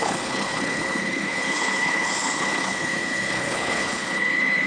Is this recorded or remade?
remade